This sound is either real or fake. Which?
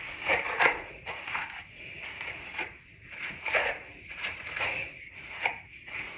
fake